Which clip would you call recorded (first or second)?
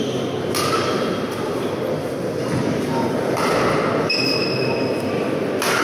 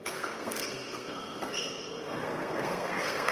first